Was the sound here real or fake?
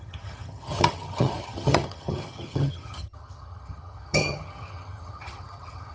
fake